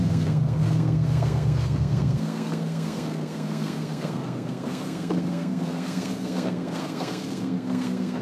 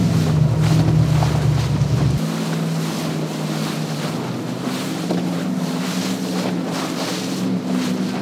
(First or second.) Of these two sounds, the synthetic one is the first